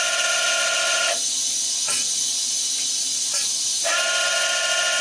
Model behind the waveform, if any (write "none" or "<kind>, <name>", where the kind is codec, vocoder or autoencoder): none